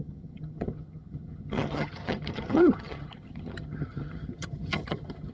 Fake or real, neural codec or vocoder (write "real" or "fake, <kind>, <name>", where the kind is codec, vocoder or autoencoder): fake, vocoder, HiFi-GAN